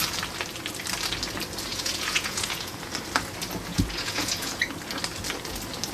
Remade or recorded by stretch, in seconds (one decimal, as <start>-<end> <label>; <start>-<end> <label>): 0.0-1.7 recorded; 1.7-2.9 remade; 2.9-3.7 recorded; 3.7-4.6 remade; 4.6-5.9 recorded